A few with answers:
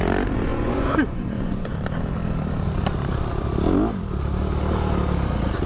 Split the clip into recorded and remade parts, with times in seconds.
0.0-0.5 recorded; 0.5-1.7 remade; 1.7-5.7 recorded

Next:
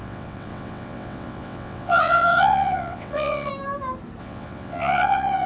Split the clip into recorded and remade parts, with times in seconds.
0.0-3.5 remade; 3.5-4.2 recorded; 4.2-5.5 remade

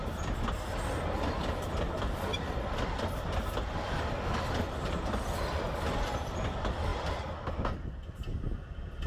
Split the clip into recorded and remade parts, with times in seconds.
0.0-9.1 recorded

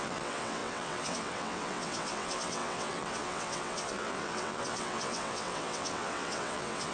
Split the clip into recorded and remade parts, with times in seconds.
0.0-6.9 remade

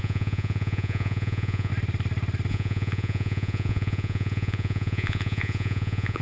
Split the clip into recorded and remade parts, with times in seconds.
0.0-1.7 remade; 1.7-2.5 recorded; 2.5-6.2 remade